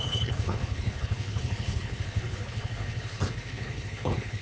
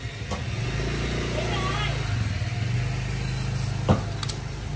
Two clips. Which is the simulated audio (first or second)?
first